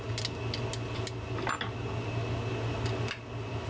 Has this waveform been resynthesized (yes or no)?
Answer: no